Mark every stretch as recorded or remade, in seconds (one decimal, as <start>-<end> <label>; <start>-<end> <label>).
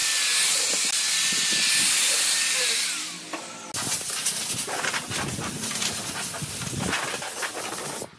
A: 0.0-8.2 recorded